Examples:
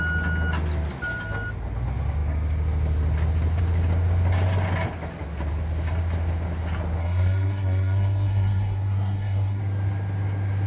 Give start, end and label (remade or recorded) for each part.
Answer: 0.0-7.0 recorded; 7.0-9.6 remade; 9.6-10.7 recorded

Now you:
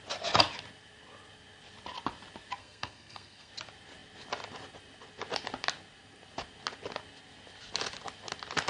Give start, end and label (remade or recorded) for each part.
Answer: 0.0-2.6 recorded; 2.6-3.5 remade; 3.5-8.7 recorded

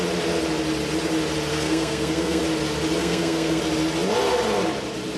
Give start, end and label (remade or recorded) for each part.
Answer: 0.0-1.5 recorded; 1.5-2.4 remade; 2.4-3.0 recorded; 3.0-3.6 remade; 3.6-5.2 recorded

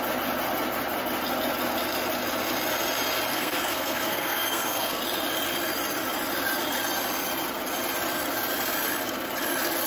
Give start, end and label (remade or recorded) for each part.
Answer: 0.0-3.3 recorded; 3.3-5.0 remade; 5.0-9.9 recorded

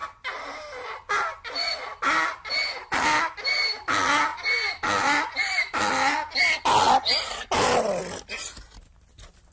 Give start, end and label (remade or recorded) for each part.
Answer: 0.0-9.5 recorded

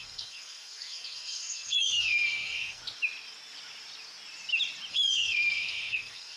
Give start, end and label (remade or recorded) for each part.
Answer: 0.0-2.8 remade; 2.8-4.9 recorded; 4.9-6.4 remade